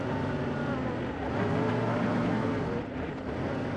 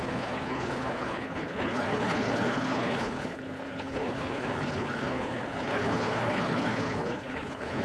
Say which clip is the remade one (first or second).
second